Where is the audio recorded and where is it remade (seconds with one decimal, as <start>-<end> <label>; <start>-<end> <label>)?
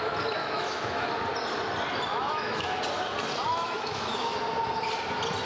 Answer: 0.0-0.4 recorded; 0.4-1.1 remade; 1.1-2.1 recorded; 2.1-2.8 remade; 2.8-3.5 recorded; 3.5-4.4 remade; 4.4-5.5 recorded